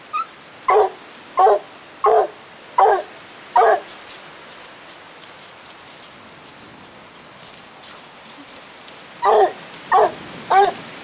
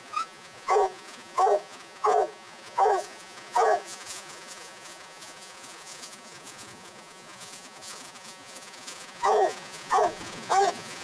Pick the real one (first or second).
first